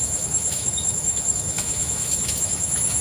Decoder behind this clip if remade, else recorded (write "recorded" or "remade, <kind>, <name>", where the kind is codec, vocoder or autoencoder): remade, autoencoder, DAC-VAE